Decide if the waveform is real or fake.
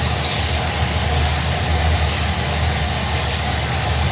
real